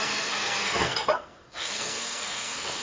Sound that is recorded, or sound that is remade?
remade